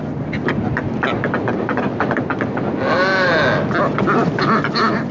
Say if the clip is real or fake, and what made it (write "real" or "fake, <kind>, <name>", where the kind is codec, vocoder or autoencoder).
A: real